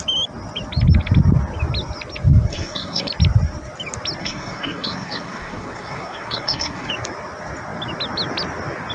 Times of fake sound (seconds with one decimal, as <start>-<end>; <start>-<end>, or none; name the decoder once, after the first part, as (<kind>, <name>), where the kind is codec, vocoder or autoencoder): 2.5-3.1 (codec, SNAC); 4.2-6.9